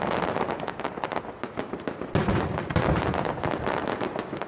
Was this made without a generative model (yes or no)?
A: yes